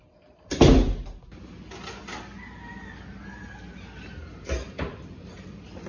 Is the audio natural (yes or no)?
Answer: yes